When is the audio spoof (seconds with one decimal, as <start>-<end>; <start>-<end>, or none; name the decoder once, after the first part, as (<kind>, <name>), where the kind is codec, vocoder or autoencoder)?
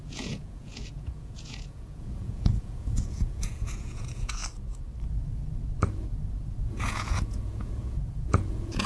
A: 0.0-4.4 (vocoder, Vocos); 6.6-8.9